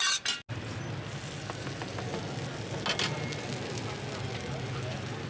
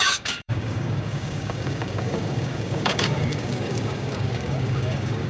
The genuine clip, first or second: first